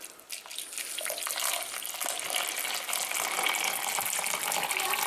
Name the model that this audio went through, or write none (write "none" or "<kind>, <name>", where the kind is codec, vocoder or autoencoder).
none